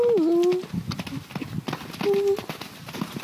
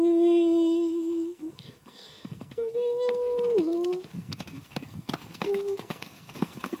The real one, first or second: first